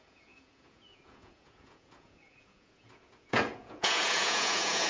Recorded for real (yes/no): no